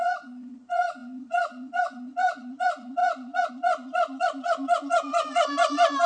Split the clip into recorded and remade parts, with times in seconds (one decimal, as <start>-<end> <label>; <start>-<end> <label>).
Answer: 0.0-6.1 remade